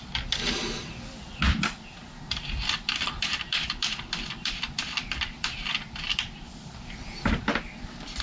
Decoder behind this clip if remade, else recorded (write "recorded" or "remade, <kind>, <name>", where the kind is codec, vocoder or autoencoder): remade, vocoder, BigVGAN v2